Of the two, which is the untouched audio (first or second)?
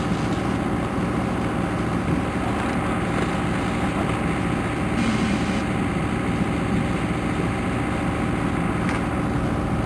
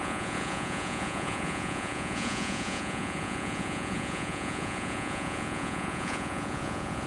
first